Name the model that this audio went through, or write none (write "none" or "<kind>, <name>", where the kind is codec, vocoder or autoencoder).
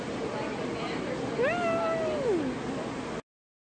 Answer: none